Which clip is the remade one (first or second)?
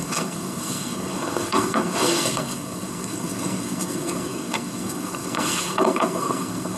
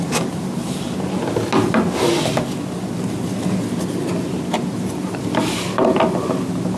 first